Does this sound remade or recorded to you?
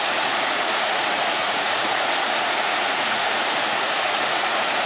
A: remade